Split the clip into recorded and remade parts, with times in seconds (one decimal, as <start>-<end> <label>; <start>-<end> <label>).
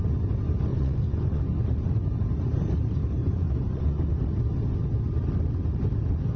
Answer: 0.0-0.7 recorded; 0.7-1.4 remade; 1.4-3.2 recorded; 3.2-4.1 remade; 4.1-6.4 recorded